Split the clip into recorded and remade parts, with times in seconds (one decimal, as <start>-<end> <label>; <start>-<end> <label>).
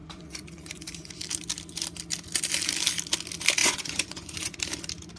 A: 0.0-1.1 remade; 1.1-3.6 recorded; 3.6-4.6 remade; 4.6-5.2 recorded